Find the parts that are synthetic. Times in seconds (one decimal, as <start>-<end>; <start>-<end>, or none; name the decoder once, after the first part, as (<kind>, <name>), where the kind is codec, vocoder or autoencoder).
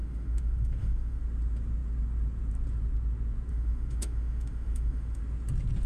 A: 0.0-1.2 (autoencoder, DAC-VAE); 3.5-5.2